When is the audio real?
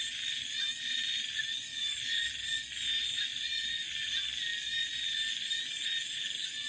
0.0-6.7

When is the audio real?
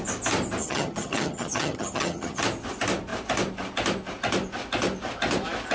0.0-0.6; 2.4-5.7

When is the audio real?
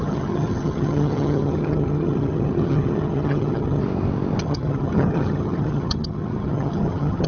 3.8-4.4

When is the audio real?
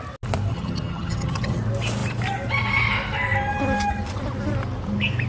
0.0-0.5; 1.6-5.3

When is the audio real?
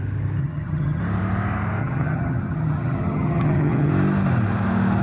0.0-0.4; 1.0-1.8; 3.9-5.0